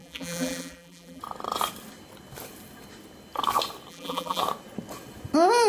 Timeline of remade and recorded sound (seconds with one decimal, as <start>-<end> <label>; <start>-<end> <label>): 0.0-1.2 remade; 1.2-3.9 recorded; 3.9-4.4 remade; 4.4-5.7 recorded